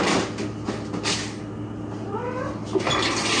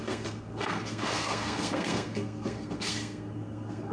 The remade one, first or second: second